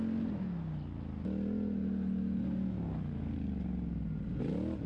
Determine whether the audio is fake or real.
real